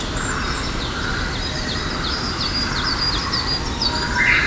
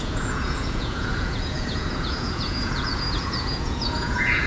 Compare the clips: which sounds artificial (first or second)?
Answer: second